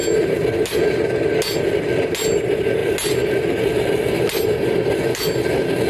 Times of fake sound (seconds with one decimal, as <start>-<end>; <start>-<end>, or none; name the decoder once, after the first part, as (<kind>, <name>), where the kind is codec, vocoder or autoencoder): none